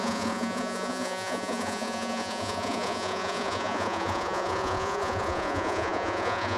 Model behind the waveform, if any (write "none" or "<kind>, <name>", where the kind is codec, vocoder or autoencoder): vocoder, Vocos